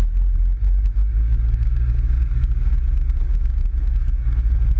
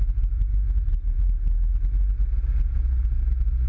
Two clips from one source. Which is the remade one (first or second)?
first